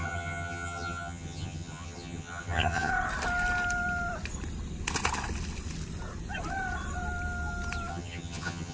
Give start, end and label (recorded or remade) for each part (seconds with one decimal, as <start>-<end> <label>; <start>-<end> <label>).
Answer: 0.0-2.9 remade; 2.9-7.9 recorded; 7.9-8.7 remade

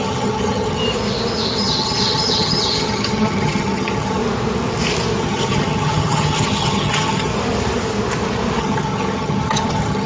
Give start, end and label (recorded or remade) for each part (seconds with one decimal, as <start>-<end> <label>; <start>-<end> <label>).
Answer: 0.0-0.8 remade; 0.8-1.6 recorded; 1.6-4.2 remade; 4.2-5.2 recorded; 5.2-7.3 remade; 7.3-8.6 recorded; 8.6-10.1 remade

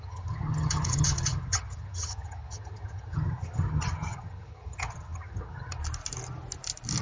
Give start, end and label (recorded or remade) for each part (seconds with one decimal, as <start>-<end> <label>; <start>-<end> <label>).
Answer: 0.0-5.8 remade; 5.8-7.0 recorded

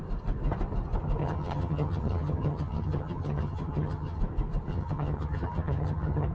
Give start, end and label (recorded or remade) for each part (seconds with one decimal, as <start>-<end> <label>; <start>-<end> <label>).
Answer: 0.0-1.2 recorded; 1.2-4.2 remade; 4.2-4.7 recorded; 4.7-6.3 remade

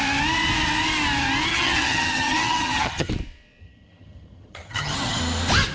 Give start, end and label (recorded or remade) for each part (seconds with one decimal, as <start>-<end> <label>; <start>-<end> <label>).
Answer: 0.0-1.5 recorded; 1.5-3.1 remade; 3.1-3.6 recorded; 3.6-5.2 remade; 5.2-5.7 recorded

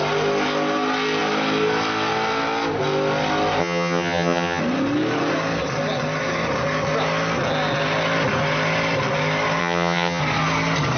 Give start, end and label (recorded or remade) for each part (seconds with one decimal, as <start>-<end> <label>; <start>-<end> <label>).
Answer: 0.0-3.6 recorded; 3.6-4.6 remade; 4.6-9.6 recorded; 9.6-10.2 remade; 10.2-11.0 recorded

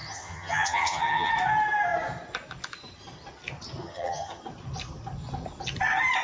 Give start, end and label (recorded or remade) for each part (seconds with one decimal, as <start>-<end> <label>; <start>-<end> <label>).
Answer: 0.0-1.3 remade; 1.3-3.8 recorded; 3.8-4.4 remade; 4.4-6.2 recorded

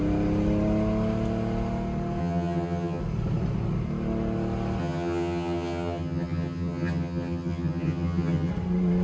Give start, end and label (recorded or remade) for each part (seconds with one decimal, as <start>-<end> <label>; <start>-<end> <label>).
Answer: 0.0-2.2 recorded; 2.2-3.0 remade; 3.0-4.8 recorded; 4.8-8.5 remade; 8.5-9.0 recorded